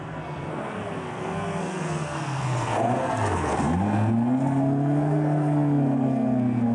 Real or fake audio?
fake